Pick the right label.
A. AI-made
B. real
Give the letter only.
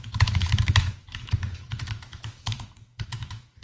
A